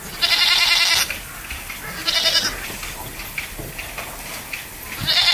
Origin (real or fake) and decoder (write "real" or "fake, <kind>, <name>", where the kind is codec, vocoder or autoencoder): real